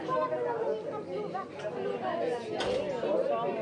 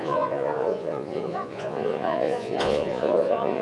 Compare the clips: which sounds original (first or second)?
first